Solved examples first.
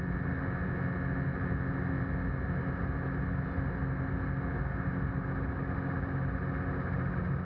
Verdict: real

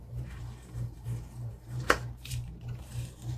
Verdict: fake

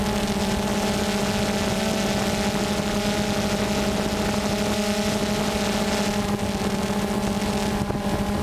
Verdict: real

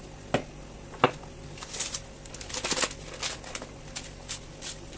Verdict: real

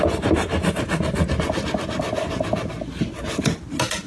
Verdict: real